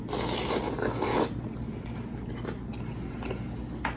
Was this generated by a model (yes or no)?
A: no